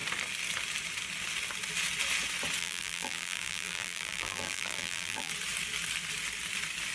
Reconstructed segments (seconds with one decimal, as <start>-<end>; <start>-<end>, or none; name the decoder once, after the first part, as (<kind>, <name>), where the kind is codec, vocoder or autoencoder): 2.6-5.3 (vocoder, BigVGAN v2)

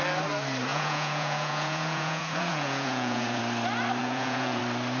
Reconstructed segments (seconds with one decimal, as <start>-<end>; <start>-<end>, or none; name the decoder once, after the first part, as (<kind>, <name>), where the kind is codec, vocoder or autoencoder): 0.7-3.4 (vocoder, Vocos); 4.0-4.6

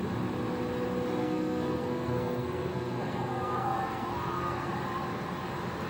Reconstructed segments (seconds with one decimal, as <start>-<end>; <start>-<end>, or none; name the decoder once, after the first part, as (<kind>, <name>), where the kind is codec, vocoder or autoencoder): 1.2-4.7 (codec, SNAC)

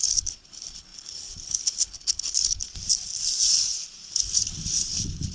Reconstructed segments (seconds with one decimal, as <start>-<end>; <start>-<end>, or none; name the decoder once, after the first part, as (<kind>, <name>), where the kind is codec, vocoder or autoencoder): 0.0-2.7 (codec, HILCodec); 4.1-5.3

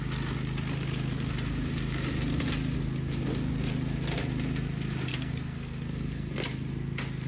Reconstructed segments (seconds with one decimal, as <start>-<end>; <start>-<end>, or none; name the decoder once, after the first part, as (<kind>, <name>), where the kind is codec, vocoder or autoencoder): 5.1-6.3 (codec, SNAC)

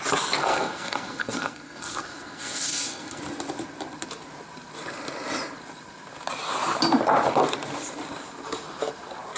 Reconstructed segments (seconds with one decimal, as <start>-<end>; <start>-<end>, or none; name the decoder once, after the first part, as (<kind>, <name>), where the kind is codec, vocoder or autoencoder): 0.4-3.2 (codec, SNAC)